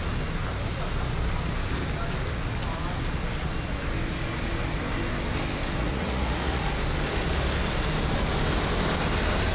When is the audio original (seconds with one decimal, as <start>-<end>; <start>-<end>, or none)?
0.0-5.8; 6.6-9.5